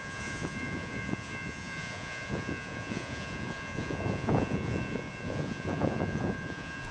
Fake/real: fake